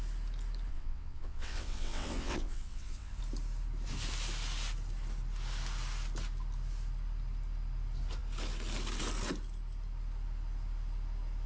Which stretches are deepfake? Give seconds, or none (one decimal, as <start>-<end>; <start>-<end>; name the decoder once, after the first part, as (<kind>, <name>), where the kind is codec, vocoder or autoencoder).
0.7-3.2 (vocoder, WaveNeXt)